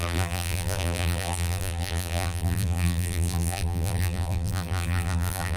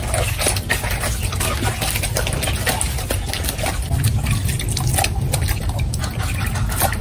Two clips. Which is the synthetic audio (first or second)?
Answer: first